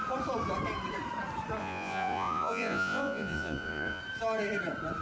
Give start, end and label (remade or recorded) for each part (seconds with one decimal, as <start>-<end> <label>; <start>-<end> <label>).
0.0-1.6 recorded; 1.6-4.0 remade; 4.0-5.0 recorded